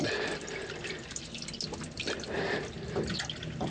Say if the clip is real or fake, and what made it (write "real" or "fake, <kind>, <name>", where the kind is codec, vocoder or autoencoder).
real